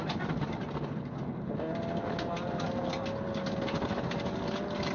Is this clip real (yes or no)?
yes